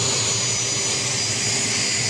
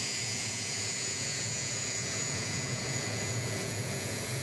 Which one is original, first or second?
first